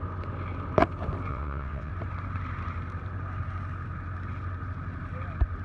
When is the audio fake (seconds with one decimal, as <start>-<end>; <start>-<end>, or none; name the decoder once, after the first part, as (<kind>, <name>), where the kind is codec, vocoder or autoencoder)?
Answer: 1.3-1.9 (vocoder, WaveNeXt)